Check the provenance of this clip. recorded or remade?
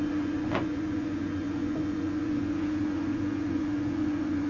remade